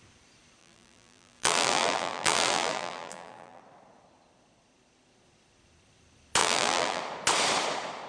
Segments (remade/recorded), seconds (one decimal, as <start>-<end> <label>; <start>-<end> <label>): 0.0-0.6 recorded; 0.6-3.6 remade; 3.6-6.4 recorded; 6.4-7.0 remade; 7.0-8.1 recorded